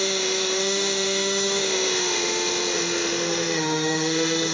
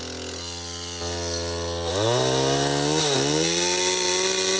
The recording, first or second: second